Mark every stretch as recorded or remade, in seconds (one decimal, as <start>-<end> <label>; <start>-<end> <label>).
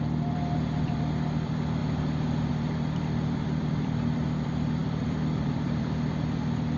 0.0-1.8 remade; 1.8-2.5 recorded; 2.5-6.8 remade